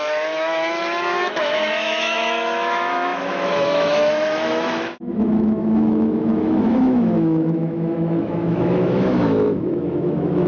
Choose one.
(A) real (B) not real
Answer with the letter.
B